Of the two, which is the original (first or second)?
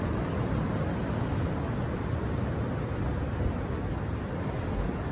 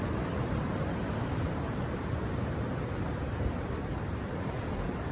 first